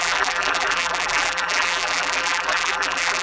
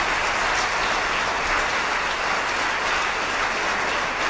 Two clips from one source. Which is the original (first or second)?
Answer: second